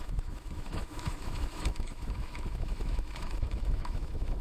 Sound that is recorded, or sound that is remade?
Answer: remade